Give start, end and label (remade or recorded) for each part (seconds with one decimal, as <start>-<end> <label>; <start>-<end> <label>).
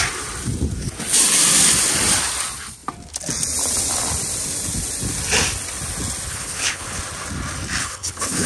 0.0-6.3 recorded; 6.3-7.0 remade; 7.0-7.8 recorded; 7.8-8.5 remade